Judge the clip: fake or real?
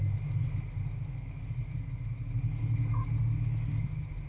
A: real